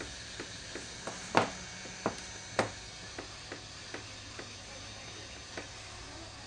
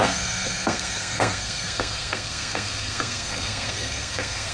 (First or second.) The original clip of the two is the first